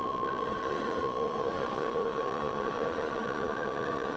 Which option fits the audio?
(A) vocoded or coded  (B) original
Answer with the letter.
A